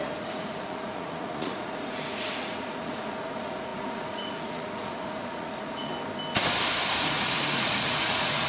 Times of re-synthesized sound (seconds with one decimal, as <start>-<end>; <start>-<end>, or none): 0.0-5.9; 7.0-8.5